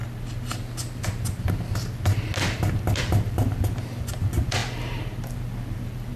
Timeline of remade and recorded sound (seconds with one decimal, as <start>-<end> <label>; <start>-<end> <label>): 0.0-2.8 recorded; 2.8-6.2 remade